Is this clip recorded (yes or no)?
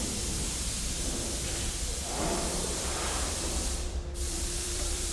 no